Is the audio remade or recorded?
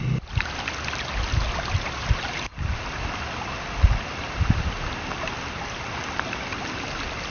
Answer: recorded